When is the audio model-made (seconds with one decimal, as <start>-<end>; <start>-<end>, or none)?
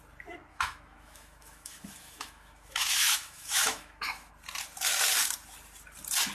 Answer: 0.5-4.3